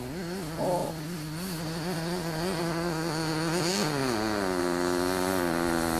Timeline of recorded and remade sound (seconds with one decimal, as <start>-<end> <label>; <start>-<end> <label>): 0.0-6.0 recorded

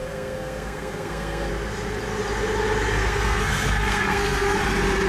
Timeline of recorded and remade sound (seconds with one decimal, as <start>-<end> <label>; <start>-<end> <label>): 0.0-1.5 remade; 1.5-3.0 recorded; 3.0-4.6 remade; 4.6-5.1 recorded